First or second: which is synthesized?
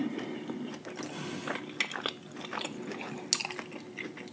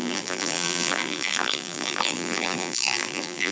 second